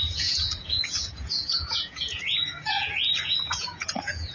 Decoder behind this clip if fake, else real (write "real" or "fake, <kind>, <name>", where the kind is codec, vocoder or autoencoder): fake, vocoder, Vocos